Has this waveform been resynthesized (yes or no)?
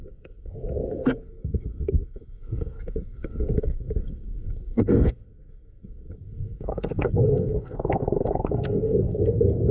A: yes